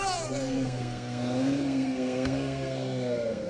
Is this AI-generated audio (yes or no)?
yes